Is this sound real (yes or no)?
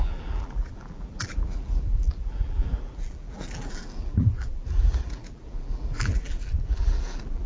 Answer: no